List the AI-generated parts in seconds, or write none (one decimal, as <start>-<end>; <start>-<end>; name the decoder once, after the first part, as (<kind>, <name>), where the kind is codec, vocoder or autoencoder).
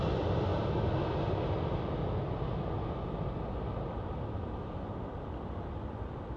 none